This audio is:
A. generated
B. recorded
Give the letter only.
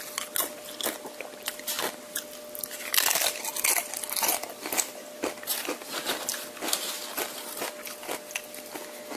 B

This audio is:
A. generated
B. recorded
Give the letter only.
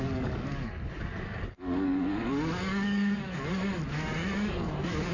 A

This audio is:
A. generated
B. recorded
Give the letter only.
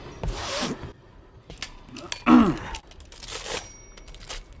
B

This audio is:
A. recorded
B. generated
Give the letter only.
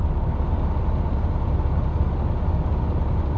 A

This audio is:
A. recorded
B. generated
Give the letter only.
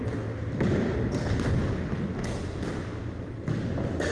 A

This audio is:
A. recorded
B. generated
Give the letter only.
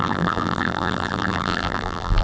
B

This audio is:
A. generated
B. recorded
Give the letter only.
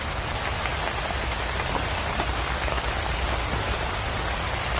B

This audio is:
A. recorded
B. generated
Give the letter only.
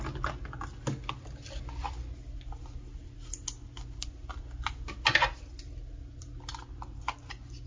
A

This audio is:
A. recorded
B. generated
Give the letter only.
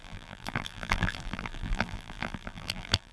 B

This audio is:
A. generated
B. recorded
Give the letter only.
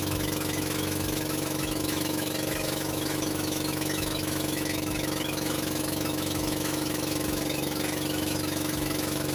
A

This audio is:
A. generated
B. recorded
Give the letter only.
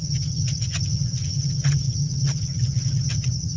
A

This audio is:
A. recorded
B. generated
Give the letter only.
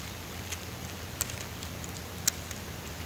A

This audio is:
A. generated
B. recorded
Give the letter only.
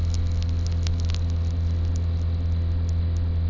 B